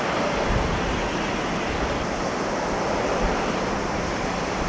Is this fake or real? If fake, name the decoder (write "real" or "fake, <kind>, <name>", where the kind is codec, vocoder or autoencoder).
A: real